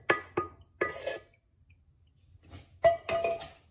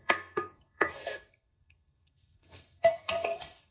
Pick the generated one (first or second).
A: second